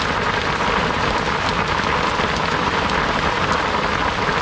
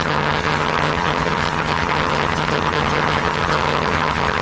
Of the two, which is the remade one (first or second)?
second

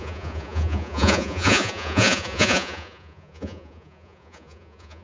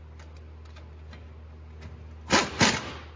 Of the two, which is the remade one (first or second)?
first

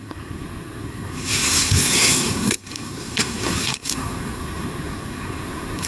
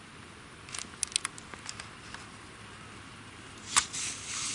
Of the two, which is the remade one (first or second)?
first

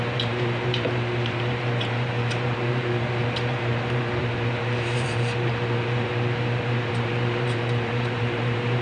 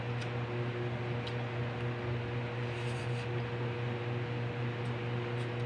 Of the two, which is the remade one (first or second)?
first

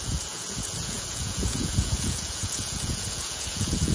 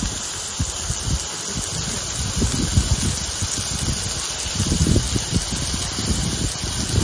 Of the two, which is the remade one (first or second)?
first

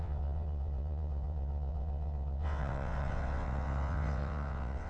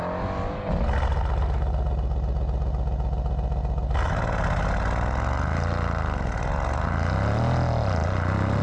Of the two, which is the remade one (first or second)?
first